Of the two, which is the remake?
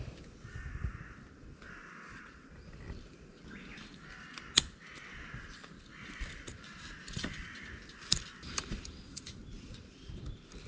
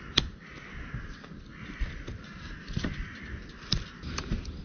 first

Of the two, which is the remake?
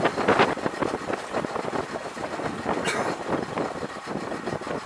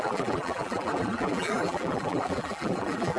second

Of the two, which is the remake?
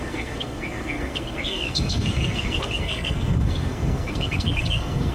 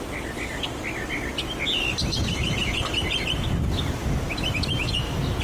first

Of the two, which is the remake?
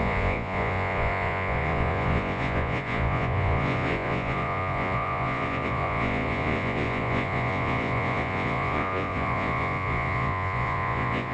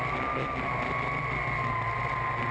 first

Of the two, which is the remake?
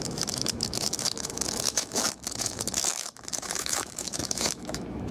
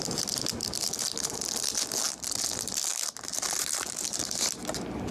first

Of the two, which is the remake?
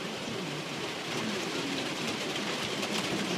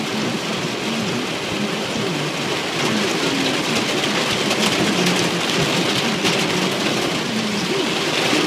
first